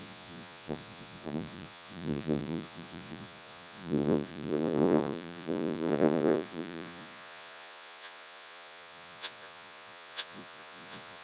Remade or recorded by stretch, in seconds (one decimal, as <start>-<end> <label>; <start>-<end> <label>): 0.0-11.2 remade